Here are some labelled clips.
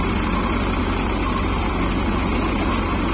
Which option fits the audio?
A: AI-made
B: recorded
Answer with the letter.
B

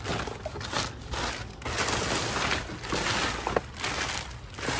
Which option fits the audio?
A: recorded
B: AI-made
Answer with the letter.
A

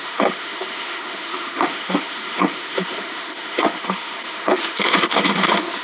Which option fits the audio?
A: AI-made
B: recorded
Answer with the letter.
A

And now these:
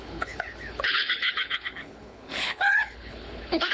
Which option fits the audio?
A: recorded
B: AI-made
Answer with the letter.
B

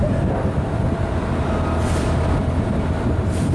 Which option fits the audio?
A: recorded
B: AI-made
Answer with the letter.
B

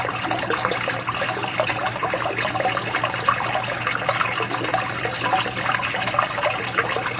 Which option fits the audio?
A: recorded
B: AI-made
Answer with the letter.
A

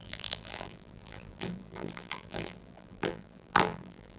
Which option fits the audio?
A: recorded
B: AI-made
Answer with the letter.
B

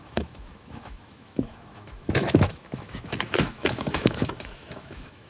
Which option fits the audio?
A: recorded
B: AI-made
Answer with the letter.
B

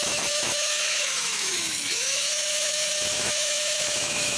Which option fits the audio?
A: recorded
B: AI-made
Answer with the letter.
B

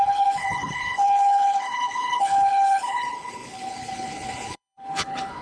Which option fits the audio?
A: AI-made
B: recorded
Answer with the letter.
A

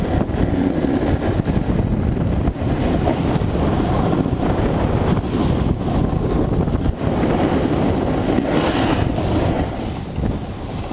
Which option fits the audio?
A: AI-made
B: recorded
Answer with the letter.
B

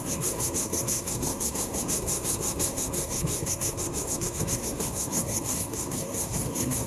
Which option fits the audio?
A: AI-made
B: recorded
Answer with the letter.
A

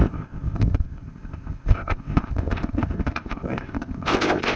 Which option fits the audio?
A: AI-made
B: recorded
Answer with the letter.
A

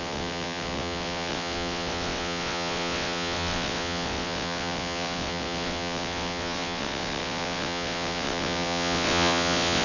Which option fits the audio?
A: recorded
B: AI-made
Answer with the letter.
B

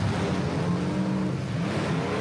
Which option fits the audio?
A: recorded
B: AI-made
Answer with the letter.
A